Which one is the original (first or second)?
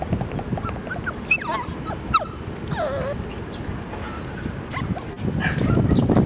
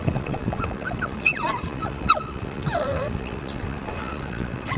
first